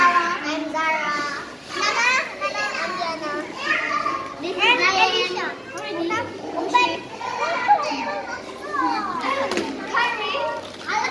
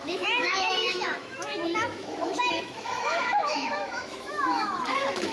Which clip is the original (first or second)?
first